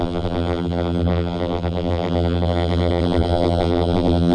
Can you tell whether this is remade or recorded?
remade